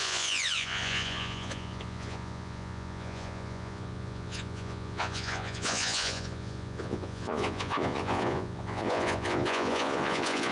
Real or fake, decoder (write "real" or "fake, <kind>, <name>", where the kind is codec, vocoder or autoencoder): fake, vocoder, Vocos